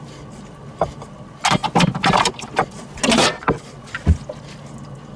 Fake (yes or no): no